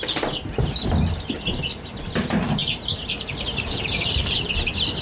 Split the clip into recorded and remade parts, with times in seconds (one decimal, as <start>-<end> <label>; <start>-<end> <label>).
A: 0.0-2.6 recorded; 2.6-4.5 remade; 4.5-5.0 recorded